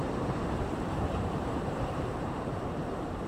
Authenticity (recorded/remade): remade